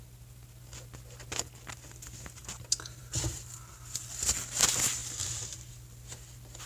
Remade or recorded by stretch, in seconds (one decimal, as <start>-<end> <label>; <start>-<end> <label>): 0.0-6.7 remade

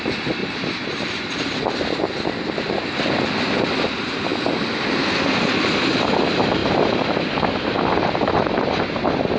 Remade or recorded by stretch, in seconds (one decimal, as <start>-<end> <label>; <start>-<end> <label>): 0.0-0.4 recorded; 0.4-1.6 remade; 1.6-9.4 recorded

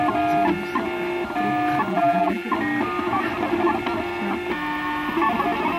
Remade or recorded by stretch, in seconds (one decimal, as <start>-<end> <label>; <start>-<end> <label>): 0.0-1.9 recorded; 1.9-2.5 remade; 2.5-5.8 recorded

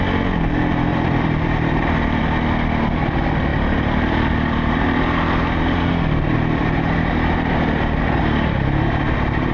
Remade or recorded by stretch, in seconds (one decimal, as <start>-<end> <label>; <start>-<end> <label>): 0.0-0.9 recorded; 0.9-2.2 remade; 2.2-3.5 recorded; 3.5-5.9 remade; 5.9-6.6 recorded; 6.6-9.5 remade

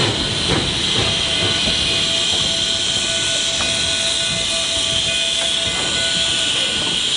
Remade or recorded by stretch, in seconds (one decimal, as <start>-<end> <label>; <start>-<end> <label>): 0.0-6.3 recorded; 6.3-7.2 remade

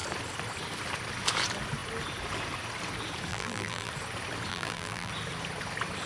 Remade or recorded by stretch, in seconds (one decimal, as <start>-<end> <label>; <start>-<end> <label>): 0.0-3.3 recorded; 3.3-3.9 remade; 3.9-4.5 recorded; 4.5-5.1 remade; 5.1-6.1 recorded